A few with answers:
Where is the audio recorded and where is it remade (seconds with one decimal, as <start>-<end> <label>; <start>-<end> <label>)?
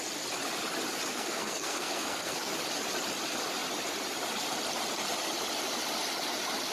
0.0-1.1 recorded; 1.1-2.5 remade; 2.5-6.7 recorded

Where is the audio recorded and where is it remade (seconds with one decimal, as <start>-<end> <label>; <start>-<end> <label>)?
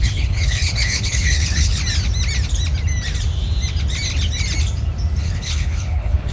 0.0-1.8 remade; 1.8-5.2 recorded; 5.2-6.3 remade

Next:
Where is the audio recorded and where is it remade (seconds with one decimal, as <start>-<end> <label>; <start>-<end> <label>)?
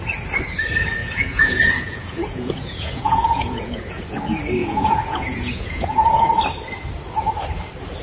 0.0-1.0 recorded; 1.0-4.0 remade; 4.0-4.6 recorded; 4.6-6.3 remade; 6.3-8.0 recorded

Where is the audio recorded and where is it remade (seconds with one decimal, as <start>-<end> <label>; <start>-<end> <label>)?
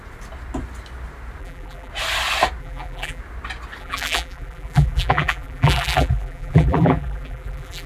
0.0-1.4 recorded; 1.4-1.9 remade; 1.9-2.6 recorded; 2.6-3.2 remade; 3.2-3.8 recorded; 3.8-7.9 remade